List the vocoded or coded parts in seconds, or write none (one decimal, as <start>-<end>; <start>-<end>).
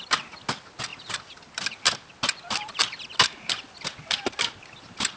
0.9-1.8